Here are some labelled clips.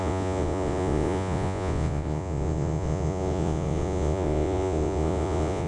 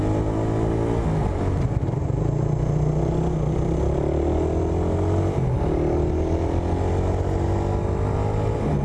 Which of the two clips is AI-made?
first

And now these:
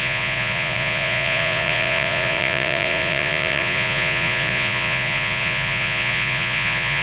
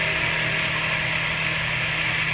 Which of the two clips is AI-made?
first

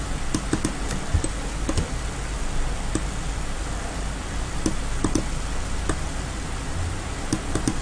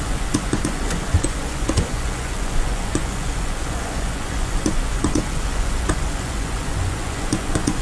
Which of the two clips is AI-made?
second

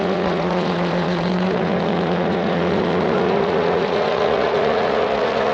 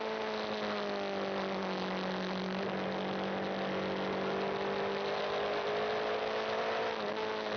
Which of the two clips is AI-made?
first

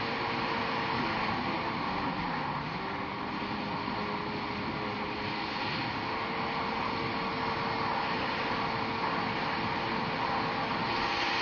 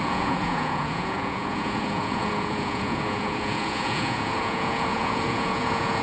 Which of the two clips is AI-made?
second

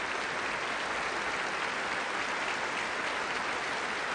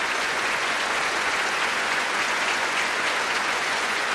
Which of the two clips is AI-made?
second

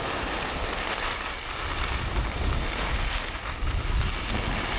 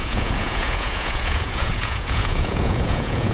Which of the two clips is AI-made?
second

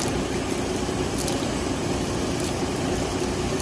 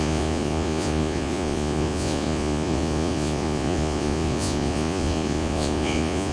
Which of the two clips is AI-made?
second